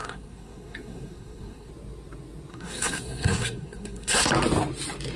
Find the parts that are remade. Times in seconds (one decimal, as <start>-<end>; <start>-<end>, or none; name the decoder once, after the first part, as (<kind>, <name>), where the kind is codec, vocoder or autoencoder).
0.0-1.7 (codec, SNAC); 2.5-4.3